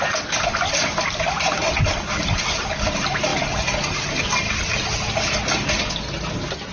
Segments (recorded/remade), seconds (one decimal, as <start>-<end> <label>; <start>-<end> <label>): 0.0-6.7 recorded